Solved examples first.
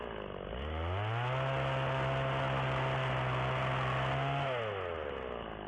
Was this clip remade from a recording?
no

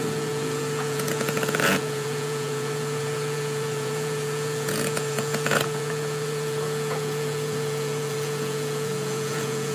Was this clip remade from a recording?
yes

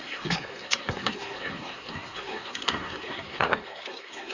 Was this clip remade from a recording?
yes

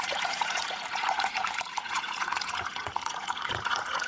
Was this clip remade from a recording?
yes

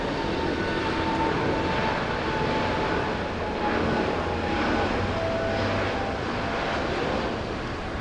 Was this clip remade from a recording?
no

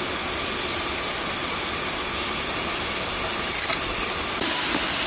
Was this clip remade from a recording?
no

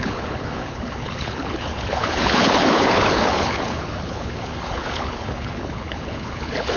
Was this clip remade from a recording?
yes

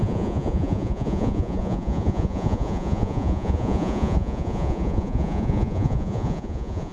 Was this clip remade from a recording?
yes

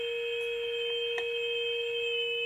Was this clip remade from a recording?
no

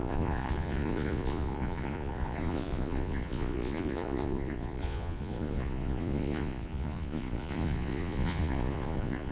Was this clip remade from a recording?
yes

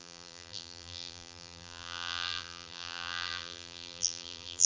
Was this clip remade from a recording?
yes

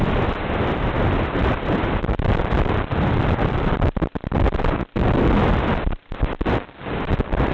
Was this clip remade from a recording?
yes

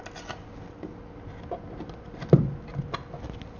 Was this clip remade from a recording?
no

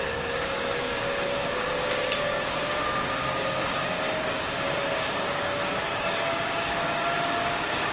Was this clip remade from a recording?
yes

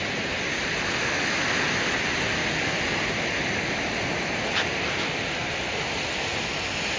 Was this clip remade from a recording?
no